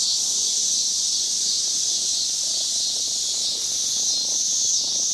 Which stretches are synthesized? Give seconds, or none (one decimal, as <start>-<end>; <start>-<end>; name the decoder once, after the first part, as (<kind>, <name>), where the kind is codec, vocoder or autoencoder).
0.4-3.3 (vocoder, Vocos)